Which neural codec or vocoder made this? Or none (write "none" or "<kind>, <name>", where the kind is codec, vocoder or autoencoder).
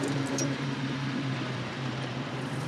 vocoder, BigVGAN v2